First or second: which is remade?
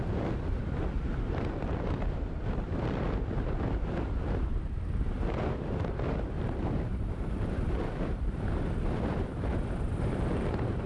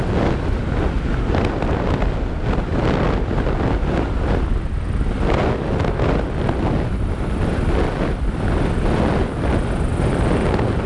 first